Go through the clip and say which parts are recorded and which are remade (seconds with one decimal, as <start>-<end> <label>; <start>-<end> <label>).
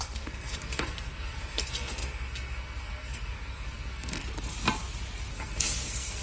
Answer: 0.0-4.2 remade; 4.2-5.3 recorded; 5.3-6.2 remade